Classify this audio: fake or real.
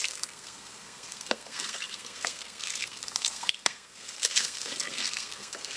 fake